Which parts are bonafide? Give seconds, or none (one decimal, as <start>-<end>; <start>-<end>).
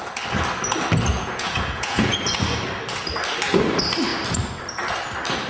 0.0-1.1; 2.1-5.5